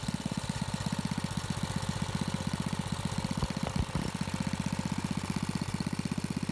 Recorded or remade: recorded